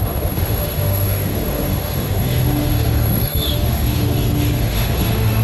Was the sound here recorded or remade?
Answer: remade